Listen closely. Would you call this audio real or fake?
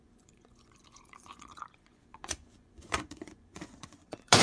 fake